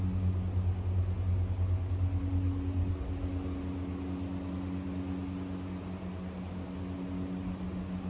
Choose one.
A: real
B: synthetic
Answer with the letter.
A